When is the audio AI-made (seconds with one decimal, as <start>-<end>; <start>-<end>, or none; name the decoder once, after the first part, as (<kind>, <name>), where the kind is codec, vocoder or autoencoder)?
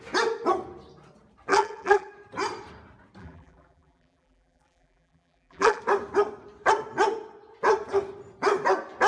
1.5-2.1 (vocoder, BigVGAN v2); 3.2-5.8